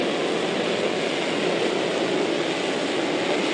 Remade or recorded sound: recorded